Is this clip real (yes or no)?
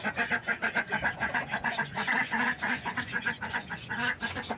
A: no